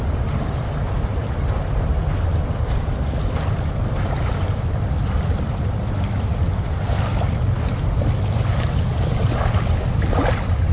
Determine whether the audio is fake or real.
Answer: real